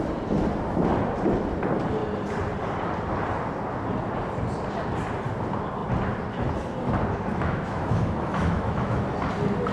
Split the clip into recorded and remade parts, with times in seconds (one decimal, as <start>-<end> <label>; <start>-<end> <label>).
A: 0.0-7.3 recorded; 7.3-9.1 remade; 9.1-9.7 recorded